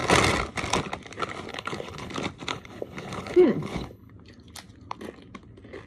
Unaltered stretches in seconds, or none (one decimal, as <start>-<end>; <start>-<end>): 0.0-1.5; 2.1-2.5; 4.1-5.9